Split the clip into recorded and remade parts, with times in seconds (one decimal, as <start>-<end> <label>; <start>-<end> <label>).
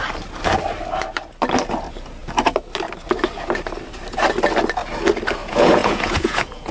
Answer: 0.0-5.4 recorded; 5.4-6.7 remade